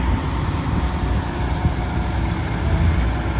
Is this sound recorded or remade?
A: recorded